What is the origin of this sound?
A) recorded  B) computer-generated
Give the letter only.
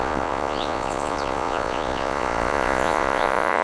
B